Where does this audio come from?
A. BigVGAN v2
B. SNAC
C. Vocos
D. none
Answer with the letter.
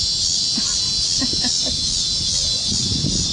D